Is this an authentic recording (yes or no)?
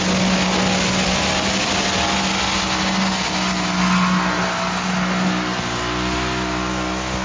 yes